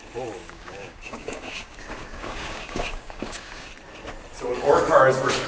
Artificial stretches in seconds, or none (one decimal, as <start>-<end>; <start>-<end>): 0.4-3.7